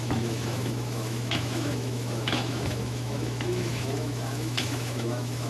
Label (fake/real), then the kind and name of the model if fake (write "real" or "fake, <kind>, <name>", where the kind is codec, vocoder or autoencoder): fake, autoencoder, DAC-VAE